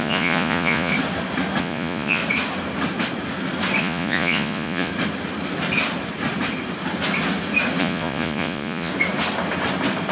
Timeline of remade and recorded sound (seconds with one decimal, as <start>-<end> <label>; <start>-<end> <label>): 0.0-0.9 remade; 0.9-1.6 recorded; 1.6-2.2 remade; 2.2-3.8 recorded; 3.8-4.9 remade; 4.9-7.8 recorded; 7.8-8.9 remade; 8.9-10.1 recorded